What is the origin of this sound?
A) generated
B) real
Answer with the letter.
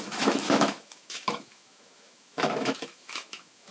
A